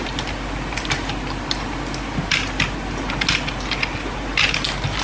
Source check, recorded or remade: recorded